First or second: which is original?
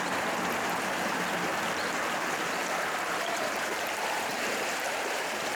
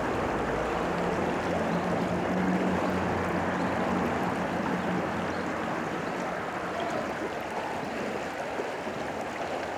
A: second